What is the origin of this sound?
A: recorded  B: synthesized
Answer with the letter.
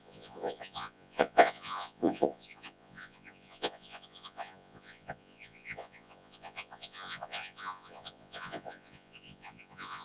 B